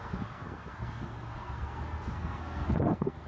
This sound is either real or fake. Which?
fake